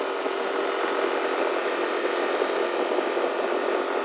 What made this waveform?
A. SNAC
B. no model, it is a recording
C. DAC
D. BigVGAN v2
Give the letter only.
B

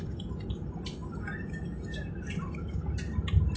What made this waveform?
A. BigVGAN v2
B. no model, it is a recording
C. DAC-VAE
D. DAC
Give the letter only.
B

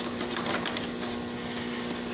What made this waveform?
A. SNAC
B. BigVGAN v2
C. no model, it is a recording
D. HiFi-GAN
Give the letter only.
C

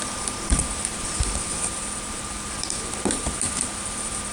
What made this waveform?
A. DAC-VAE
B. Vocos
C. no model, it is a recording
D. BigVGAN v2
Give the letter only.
D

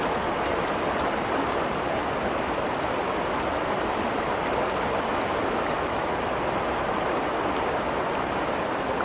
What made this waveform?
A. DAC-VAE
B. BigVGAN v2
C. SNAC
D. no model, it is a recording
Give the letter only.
D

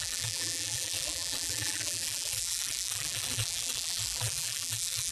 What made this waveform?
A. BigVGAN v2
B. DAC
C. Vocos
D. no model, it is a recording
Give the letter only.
A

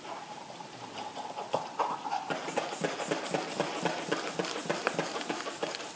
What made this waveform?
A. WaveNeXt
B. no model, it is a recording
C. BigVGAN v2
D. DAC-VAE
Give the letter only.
C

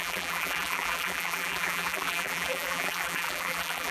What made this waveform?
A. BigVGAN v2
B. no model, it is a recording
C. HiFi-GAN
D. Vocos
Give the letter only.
A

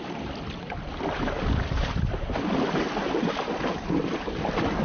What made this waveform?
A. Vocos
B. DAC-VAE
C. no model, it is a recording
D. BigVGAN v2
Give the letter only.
D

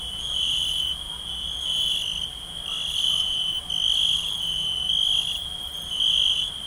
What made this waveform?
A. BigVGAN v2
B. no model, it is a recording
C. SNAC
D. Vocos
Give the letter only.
B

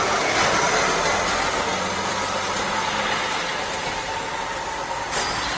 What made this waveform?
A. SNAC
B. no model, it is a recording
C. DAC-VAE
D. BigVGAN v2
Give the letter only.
B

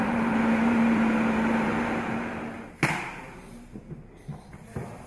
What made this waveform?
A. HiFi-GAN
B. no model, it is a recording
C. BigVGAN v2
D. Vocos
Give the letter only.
C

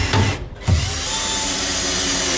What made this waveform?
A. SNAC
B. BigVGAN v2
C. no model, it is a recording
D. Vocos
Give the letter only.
B